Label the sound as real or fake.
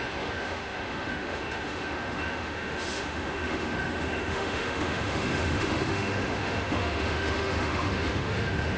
fake